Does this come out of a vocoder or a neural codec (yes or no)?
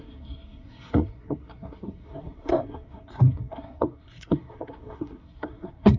yes